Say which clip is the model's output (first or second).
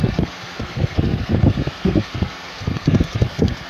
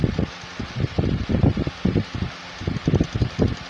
first